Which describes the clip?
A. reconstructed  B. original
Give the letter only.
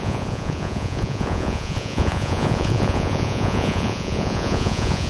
A